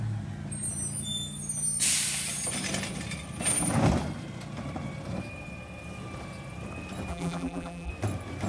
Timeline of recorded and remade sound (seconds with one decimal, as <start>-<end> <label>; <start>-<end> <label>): 0.0-7.1 recorded; 7.1-7.9 remade; 7.9-8.5 recorded